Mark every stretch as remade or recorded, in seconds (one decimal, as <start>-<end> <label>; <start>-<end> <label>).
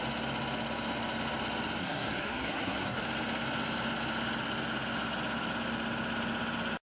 0.0-1.8 recorded; 1.8-3.0 remade; 3.0-7.0 recorded